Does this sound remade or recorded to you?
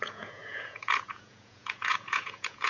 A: remade